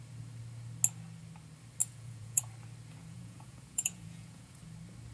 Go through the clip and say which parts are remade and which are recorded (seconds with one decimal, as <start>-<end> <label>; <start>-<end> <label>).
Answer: 0.0-1.8 recorded; 1.8-2.5 remade; 2.5-3.0 recorded; 3.0-4.6 remade; 4.6-5.1 recorded